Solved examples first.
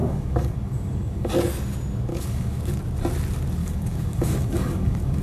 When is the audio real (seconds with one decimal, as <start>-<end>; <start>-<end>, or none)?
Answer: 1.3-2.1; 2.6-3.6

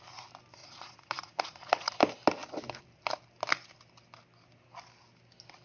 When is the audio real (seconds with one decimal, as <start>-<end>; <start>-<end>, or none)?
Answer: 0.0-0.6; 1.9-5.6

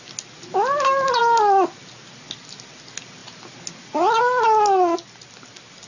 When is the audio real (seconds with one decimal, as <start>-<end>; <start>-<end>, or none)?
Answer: 0.0-5.9

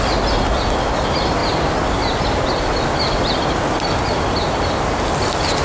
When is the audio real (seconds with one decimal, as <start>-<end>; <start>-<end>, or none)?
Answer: 0.0-5.6